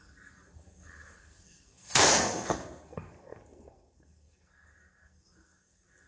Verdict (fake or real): fake